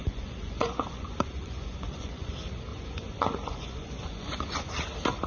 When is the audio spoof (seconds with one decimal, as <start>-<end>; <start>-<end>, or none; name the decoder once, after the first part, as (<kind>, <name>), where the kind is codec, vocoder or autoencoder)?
0.0-2.3 (vocoder, Vocos); 2.7-4.7